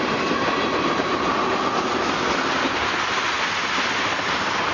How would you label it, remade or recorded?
recorded